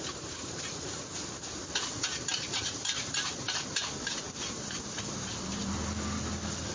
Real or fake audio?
fake